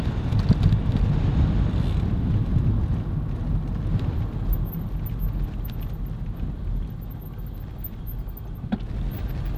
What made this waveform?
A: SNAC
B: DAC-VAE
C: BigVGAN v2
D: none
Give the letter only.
D